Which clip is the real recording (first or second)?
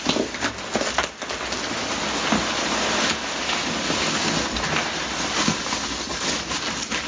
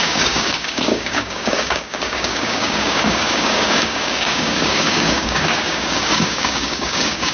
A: first